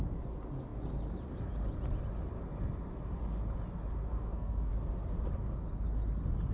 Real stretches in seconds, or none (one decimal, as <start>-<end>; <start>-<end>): 0.0-4.1; 4.7-6.5